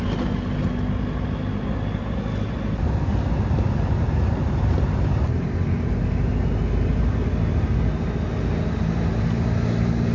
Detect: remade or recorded recorded